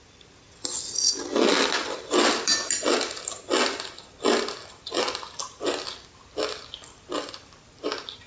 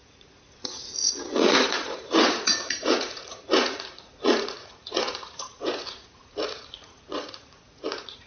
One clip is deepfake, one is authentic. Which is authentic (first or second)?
first